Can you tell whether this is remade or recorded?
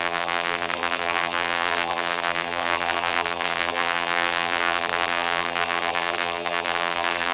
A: remade